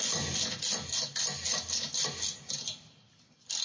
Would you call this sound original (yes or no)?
yes